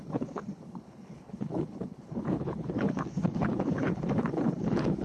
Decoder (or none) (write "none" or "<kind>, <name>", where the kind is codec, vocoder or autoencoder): codec, HILCodec